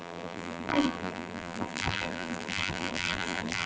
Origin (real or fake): fake